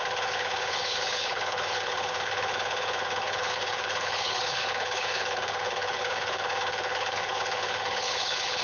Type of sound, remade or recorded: remade